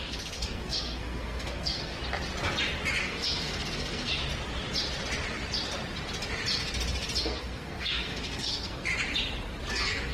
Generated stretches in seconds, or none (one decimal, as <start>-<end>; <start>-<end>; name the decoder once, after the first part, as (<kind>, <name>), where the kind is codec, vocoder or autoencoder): 0.0-2.0 (codec, SNAC); 3.0-4.2; 7.2-8.9; 9.7-10.1